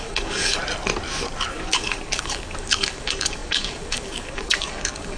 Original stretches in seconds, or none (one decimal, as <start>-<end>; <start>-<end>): 0.6-1.5

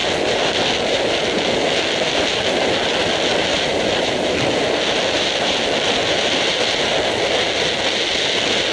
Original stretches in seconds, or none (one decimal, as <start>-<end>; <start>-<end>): 0.0-8.7

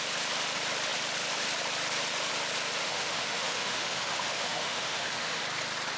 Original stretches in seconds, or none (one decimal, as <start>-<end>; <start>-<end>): 0.0-2.8; 5.4-6.0

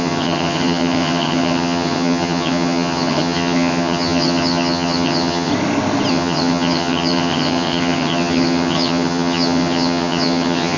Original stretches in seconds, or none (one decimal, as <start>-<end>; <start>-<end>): 5.5-6.1

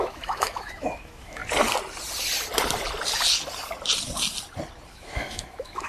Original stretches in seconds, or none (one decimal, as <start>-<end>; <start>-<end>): 1.4-4.9

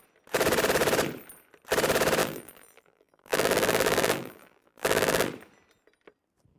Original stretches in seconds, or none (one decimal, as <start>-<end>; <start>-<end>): 0.0-2.2; 5.3-6.6